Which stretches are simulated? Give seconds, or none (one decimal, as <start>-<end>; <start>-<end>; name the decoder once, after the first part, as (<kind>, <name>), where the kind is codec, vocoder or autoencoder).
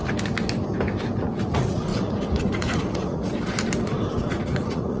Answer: 1.4-3.3 (vocoder, Vocos); 4.2-5.0